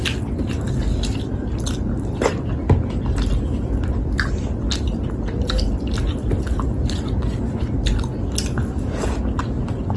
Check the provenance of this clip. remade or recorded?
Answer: recorded